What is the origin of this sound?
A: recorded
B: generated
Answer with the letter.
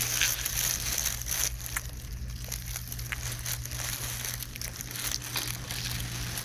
A